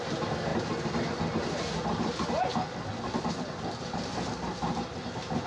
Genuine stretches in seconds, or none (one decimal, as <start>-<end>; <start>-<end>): 0.0-5.5